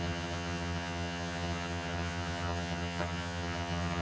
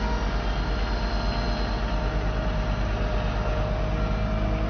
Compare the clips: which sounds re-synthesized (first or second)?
first